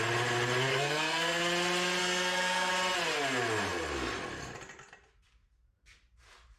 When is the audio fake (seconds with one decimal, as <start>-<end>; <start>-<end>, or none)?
0.7-1.4; 2.0-2.7